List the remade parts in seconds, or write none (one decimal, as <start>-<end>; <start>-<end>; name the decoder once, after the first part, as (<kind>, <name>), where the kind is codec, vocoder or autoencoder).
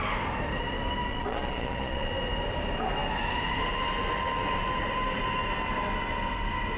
1.1-2.1 (vocoder, Vocos)